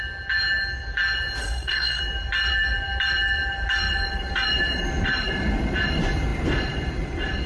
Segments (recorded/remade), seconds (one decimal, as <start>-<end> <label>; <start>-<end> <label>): 0.0-1.4 recorded; 1.4-2.0 remade; 2.0-7.5 recorded